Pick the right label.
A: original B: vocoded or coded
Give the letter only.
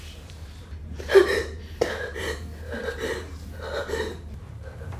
B